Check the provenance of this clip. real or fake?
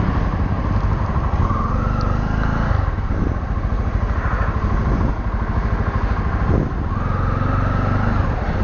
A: real